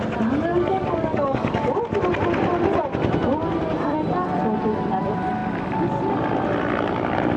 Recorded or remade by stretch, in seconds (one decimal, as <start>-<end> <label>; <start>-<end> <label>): 0.0-0.5 recorded; 0.5-1.8 remade; 1.8-7.4 recorded